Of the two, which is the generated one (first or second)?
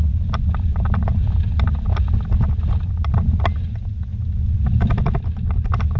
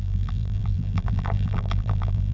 second